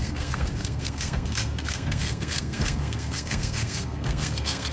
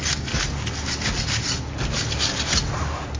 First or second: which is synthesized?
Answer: first